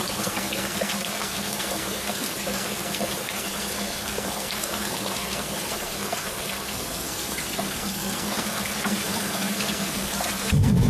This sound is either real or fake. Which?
fake